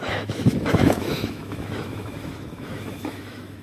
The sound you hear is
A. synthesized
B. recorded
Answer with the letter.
A